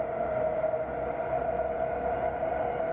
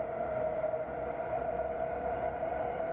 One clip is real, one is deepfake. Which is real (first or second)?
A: first